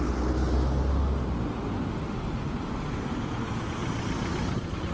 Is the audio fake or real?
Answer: real